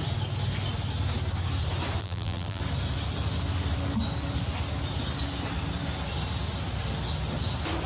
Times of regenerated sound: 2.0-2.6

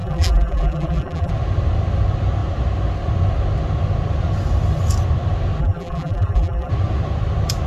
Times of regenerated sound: 0.0-1.3; 5.6-6.7

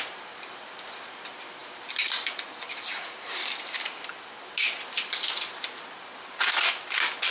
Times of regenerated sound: none

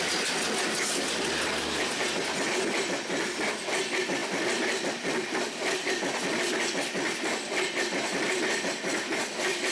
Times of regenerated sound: none

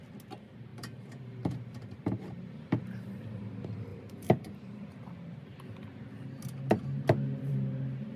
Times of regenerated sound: 0.7-3.4; 3.9-5.1

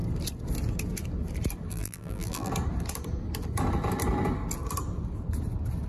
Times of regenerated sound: 1.7-2.5